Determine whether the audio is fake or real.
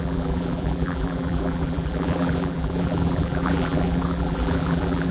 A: fake